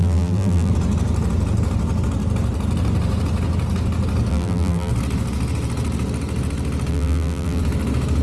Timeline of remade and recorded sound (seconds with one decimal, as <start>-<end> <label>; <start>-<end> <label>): 0.0-0.7 remade; 0.7-4.3 recorded; 4.3-4.9 remade; 4.9-6.9 recorded; 6.9-7.6 remade; 7.6-8.2 recorded